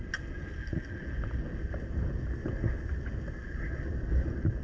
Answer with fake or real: real